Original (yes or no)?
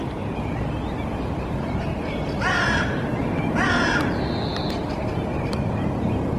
yes